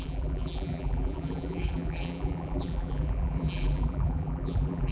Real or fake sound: fake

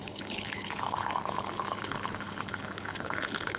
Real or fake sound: fake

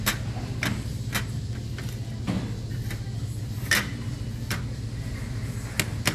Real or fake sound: real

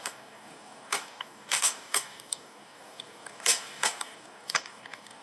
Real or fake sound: fake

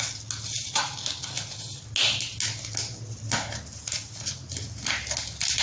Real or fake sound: real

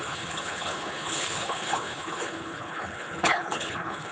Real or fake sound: fake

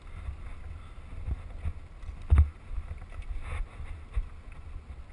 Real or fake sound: real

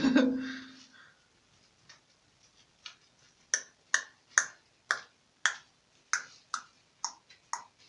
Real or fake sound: real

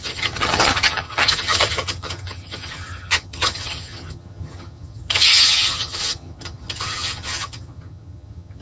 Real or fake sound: fake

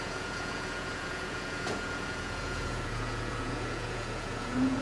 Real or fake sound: fake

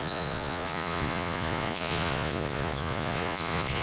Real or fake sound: fake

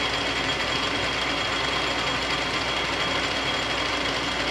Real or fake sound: real